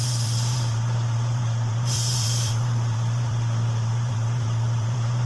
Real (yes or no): no